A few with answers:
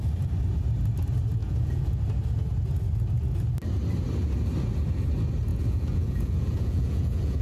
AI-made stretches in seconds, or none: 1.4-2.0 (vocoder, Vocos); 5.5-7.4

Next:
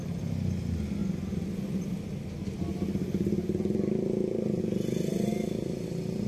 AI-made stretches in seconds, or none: none

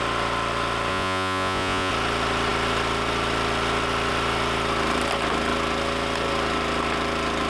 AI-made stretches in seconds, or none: 0.9-1.9 (vocoder, Vocos)

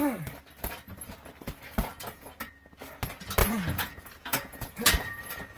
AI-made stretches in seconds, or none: 1.9-2.5 (vocoder, Vocos); 3.4-4.9